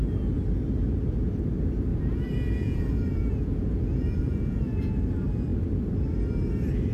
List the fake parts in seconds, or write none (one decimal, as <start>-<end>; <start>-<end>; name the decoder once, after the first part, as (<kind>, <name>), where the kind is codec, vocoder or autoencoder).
1.9-4.9 (vocoder, Vocos)